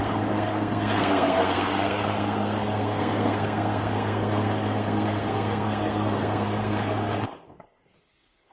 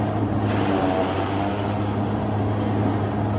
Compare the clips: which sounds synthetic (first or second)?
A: first